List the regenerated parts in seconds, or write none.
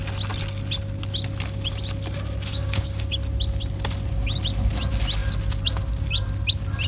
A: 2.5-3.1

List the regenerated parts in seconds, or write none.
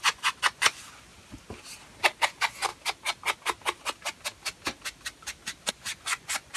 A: 0.0-1.1; 2.2-2.7; 5.7-6.6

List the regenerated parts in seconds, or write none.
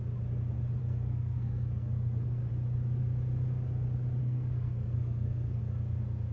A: 0.8-2.5; 4.2-5.6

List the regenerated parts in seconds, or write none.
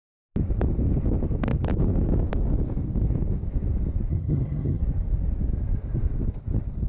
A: 4.1-4.8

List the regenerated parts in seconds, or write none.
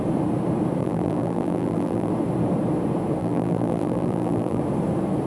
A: 0.8-2.1; 3.2-4.6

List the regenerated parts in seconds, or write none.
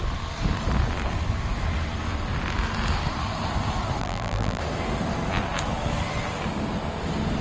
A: 4.0-4.6